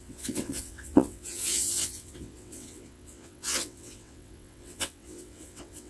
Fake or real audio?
fake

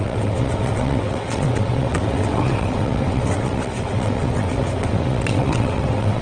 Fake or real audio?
fake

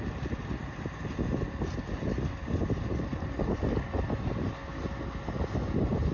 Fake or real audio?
real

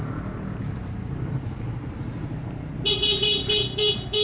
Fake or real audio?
real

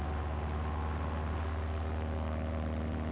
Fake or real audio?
real